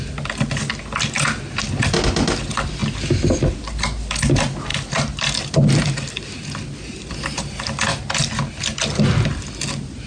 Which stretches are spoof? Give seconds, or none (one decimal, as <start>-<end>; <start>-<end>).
none